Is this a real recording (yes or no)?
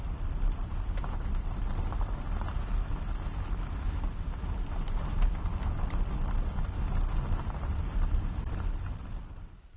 yes